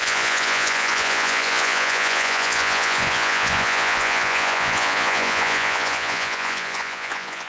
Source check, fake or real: fake